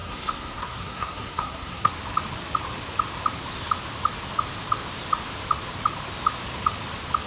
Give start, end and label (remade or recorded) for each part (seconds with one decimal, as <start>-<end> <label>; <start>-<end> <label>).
0.0-1.9 remade; 1.9-7.3 recorded